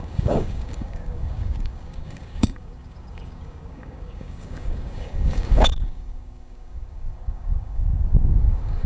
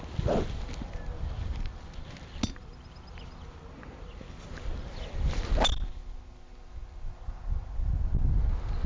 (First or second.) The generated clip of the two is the first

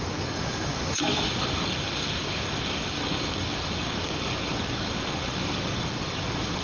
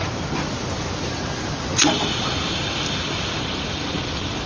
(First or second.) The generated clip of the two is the first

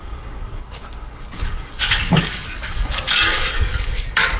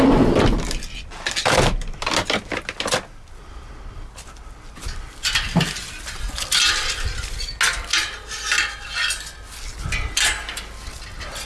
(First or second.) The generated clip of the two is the first